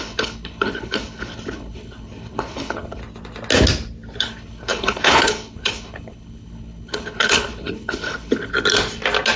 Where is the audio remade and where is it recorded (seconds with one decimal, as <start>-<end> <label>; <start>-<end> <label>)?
0.0-3.0 remade; 3.0-4.2 recorded; 4.2-8.5 remade; 8.5-9.4 recorded